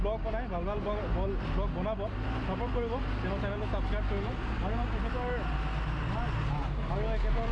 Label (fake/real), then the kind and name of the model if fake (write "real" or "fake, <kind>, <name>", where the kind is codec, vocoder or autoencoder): real